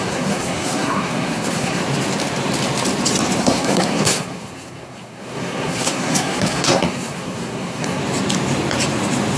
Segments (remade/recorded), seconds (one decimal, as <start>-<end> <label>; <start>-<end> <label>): 0.0-1.8 remade; 1.8-3.4 recorded; 3.4-8.0 remade; 8.0-9.4 recorded